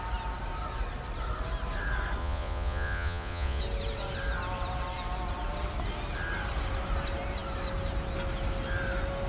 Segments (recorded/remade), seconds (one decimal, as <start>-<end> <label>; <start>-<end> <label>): 0.0-2.2 recorded; 2.2-3.6 remade; 3.6-9.3 recorded